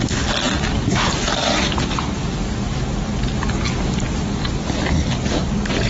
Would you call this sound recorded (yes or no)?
yes